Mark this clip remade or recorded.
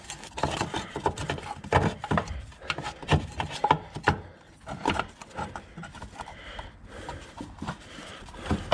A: remade